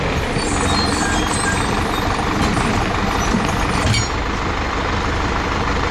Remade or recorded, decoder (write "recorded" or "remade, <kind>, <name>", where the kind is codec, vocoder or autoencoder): remade, vocoder, BigVGAN v2